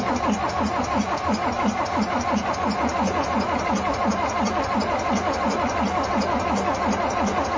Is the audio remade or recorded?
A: recorded